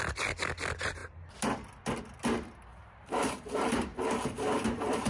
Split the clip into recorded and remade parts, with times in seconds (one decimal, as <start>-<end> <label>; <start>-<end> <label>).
0.0-2.7 recorded; 2.7-5.1 remade